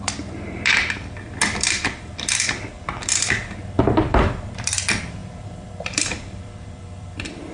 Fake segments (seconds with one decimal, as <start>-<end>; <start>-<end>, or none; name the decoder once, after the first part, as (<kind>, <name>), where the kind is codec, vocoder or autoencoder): 0.0-7.5 (vocoder, BigVGAN v2)